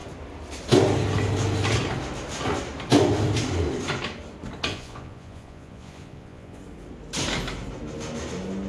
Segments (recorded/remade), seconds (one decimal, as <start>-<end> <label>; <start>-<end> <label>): 0.0-4.7 recorded; 4.7-6.6 remade; 6.6-8.7 recorded